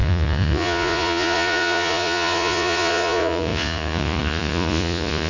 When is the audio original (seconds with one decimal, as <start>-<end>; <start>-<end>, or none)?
none